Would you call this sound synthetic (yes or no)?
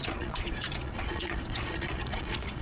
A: yes